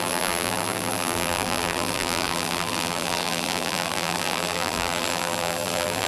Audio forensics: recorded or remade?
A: remade